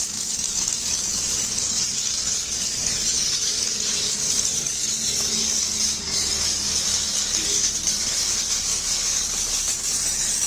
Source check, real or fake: fake